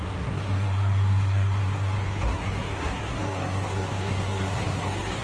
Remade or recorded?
remade